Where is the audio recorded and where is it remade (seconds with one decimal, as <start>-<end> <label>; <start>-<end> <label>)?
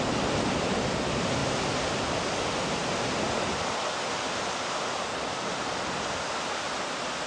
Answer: 0.0-7.3 recorded